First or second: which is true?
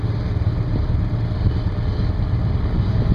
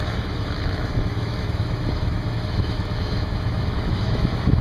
first